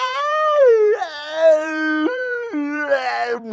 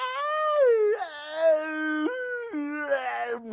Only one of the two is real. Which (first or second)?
second